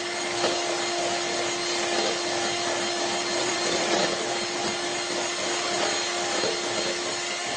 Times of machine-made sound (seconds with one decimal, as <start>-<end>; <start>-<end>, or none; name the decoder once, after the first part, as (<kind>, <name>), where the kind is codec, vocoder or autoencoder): 3.4-4.0 (vocoder, WaveNeXt)